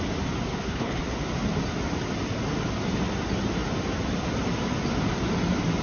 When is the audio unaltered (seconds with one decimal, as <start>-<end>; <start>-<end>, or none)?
0.0-0.5; 1.0-5.8